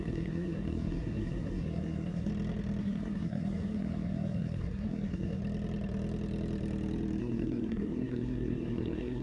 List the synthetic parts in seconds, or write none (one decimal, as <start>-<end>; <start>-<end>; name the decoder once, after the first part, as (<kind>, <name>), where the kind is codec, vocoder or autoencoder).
0.0-2.3 (codec, SNAC); 2.8-5.4; 7.2-9.2